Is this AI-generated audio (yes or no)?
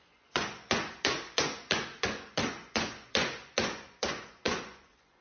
yes